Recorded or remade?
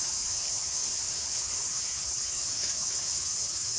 remade